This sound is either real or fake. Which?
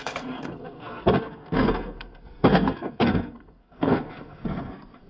fake